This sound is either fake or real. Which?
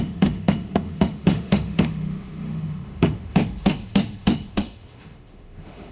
fake